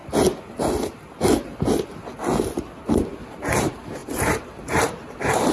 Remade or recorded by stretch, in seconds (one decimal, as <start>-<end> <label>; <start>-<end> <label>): 0.0-3.3 recorded; 3.3-5.5 remade